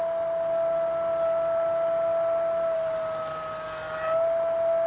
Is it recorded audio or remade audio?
recorded